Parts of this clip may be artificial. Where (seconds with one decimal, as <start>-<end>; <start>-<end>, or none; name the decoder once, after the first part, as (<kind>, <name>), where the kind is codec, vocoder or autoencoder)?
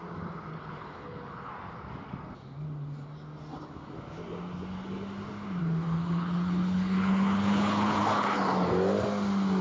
0.5-1.5 (codec, HILCodec); 5.6-8.4